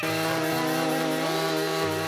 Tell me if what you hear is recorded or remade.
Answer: recorded